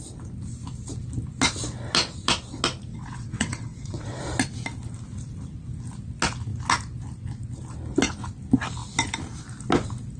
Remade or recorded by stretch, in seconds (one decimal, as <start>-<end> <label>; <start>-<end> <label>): 0.0-2.9 recorded; 2.9-4.2 remade; 4.2-10.2 recorded